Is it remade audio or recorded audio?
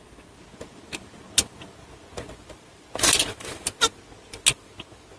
recorded